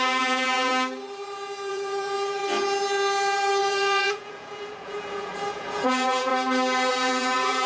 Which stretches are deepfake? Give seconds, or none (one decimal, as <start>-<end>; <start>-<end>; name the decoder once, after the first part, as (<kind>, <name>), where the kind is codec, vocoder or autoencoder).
0.0-0.7 (vocoder, Vocos); 1.7-2.4; 3.6-6.3; 6.9-7.7